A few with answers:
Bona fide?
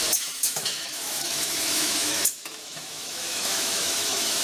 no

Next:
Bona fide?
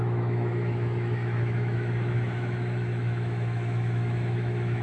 no